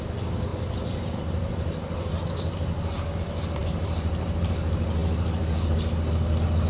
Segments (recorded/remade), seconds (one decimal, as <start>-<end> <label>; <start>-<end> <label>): 0.0-0.5 recorded; 0.5-3.2 remade; 3.2-3.6 recorded; 3.6-4.4 remade; 4.4-5.0 recorded; 5.0-5.7 remade; 5.7-6.7 recorded